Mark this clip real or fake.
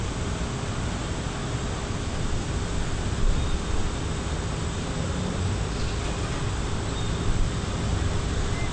real